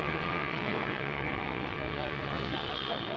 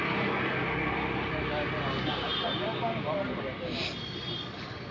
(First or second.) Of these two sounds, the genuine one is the second